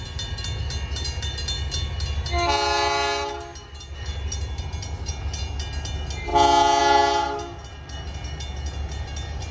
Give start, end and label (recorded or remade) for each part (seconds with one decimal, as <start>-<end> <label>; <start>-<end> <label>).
0.0-9.5 recorded